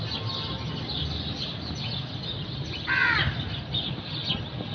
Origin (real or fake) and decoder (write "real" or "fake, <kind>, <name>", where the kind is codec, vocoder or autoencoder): real